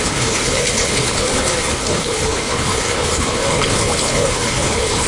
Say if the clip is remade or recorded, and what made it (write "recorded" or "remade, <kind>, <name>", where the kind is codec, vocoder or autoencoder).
remade, codec, HILCodec